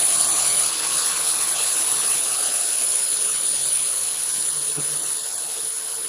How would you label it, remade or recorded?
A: remade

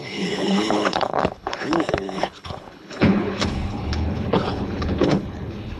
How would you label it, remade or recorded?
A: remade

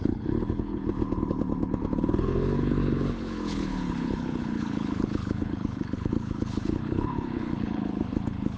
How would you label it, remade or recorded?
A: remade